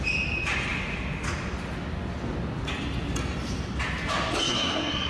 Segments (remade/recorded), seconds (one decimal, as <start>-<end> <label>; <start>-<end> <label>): 0.0-4.4 recorded; 4.4-5.1 remade